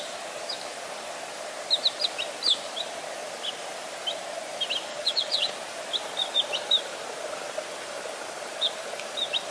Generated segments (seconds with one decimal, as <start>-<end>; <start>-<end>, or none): 4.9-5.5